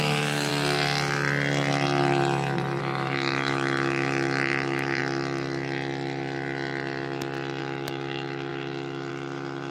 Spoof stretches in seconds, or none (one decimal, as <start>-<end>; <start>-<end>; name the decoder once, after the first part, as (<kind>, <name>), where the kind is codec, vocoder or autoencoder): 0.0-0.5 (autoencoder, DAC-VAE); 2.8-5.0; 7.6-9.7